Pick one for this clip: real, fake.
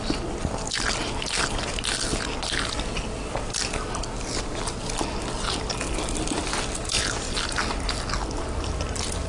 real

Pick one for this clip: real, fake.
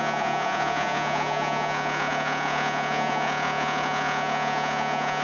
fake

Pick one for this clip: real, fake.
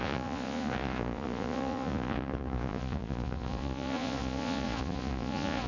fake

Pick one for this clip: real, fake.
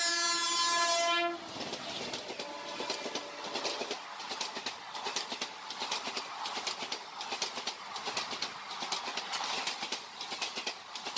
real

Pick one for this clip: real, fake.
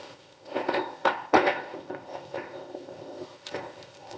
fake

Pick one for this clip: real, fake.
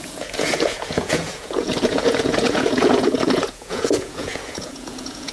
fake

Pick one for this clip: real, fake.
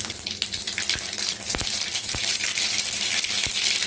fake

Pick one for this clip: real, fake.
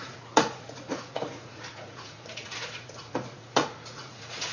fake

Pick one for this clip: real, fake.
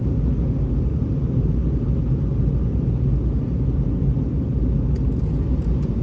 real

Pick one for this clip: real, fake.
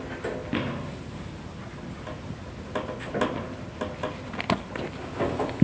real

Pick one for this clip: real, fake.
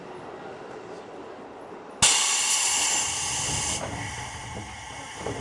real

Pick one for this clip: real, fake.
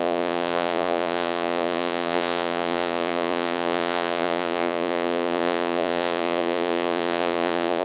fake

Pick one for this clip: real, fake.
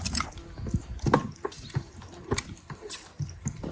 real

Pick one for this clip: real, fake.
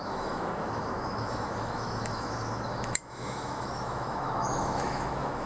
fake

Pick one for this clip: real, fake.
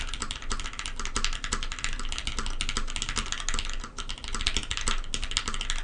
real